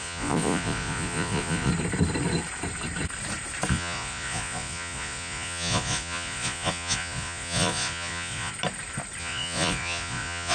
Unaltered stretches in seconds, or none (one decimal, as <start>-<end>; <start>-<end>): 1.7-3.7; 8.5-9.2